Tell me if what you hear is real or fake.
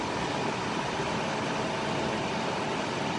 real